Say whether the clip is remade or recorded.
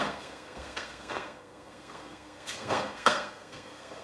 remade